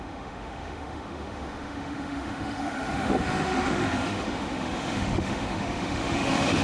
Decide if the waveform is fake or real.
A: fake